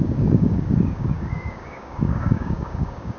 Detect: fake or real fake